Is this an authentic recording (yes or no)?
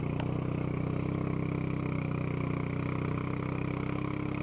yes